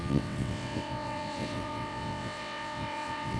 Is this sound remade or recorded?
remade